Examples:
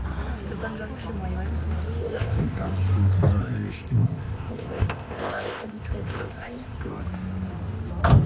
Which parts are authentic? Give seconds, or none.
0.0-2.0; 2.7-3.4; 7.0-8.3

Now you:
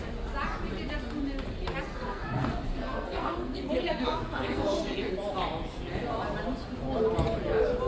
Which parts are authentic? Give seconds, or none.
0.0-1.9; 5.1-7.9

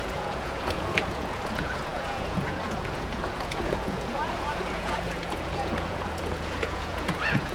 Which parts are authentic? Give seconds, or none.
none

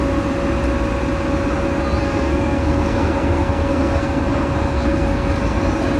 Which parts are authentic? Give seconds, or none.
0.0-2.0; 5.6-6.0

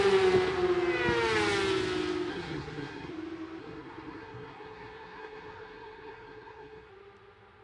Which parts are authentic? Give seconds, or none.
0.0-2.3; 3.1-3.6; 6.9-7.6